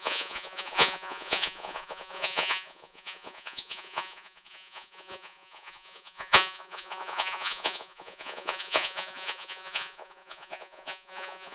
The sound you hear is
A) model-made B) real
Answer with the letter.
A